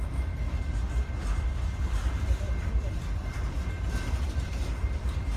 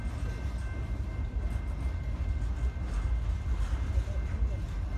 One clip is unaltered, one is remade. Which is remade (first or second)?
first